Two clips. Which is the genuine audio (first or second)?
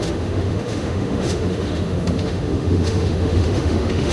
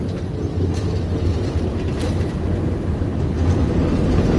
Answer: second